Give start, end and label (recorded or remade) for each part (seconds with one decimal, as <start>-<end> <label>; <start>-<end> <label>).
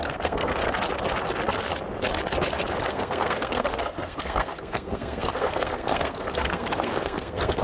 0.0-0.6 remade; 0.6-2.9 recorded; 2.9-7.6 remade